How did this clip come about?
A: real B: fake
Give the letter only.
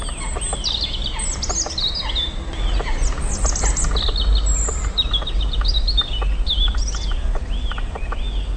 A